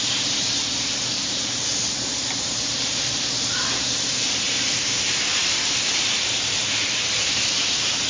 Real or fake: fake